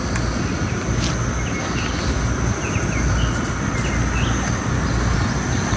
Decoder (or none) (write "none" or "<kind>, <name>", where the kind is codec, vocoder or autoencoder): none